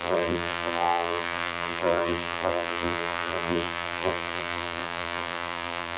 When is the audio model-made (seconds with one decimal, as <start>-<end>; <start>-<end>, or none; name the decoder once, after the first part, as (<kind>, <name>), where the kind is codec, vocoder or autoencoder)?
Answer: 0.0-6.0 (vocoder, BigVGAN v2)